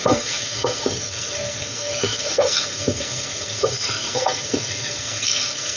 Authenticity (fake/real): fake